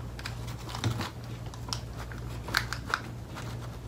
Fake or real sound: real